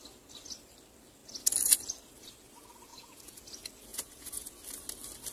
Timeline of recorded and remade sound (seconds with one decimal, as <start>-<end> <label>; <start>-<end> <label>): 0.0-2.9 recorded; 2.9-3.4 remade; 3.4-3.9 recorded; 3.9-4.5 remade; 4.5-5.3 recorded